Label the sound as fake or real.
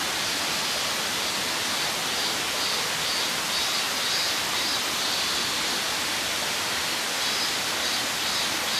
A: real